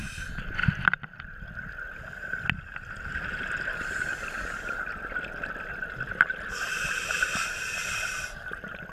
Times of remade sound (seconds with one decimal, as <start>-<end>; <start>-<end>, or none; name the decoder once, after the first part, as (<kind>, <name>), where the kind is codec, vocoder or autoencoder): none